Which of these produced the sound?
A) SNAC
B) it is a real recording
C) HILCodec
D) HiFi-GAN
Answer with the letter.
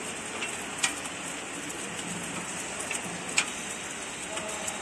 B